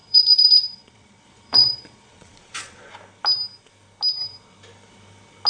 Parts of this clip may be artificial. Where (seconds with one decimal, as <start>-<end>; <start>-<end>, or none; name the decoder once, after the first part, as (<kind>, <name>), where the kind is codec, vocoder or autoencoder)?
0.0-2.9 (vocoder, Vocos)